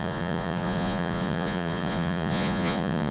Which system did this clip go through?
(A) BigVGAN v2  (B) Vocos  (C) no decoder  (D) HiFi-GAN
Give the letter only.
B